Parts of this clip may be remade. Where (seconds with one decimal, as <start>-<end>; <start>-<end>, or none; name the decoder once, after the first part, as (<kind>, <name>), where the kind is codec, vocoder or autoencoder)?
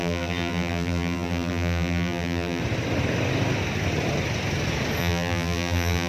0.0-2.6 (vocoder, BigVGAN v2); 5.0-6.1